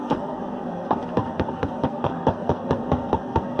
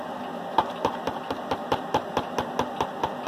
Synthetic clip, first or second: first